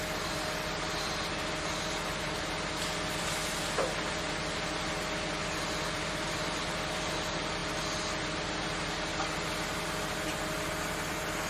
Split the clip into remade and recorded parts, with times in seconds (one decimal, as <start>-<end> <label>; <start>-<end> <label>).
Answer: 0.0-11.5 recorded